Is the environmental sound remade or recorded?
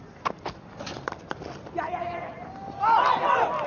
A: remade